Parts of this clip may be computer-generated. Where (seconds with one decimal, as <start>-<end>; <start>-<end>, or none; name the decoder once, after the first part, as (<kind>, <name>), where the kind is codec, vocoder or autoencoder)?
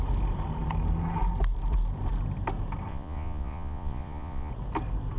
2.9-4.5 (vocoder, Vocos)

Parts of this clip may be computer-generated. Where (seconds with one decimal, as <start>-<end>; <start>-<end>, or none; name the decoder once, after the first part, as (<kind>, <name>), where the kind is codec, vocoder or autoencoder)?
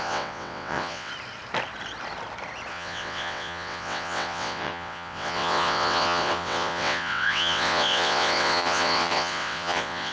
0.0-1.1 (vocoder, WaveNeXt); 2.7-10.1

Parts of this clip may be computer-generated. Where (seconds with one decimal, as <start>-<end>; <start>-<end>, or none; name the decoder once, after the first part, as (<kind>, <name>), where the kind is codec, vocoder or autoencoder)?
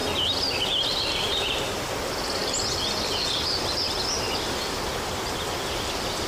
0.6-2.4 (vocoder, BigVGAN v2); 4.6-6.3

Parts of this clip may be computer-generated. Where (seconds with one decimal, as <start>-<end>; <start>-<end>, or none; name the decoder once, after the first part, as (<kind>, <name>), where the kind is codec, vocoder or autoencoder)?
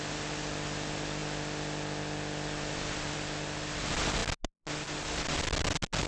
none